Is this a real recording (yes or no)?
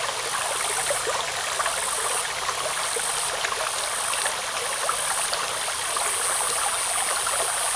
yes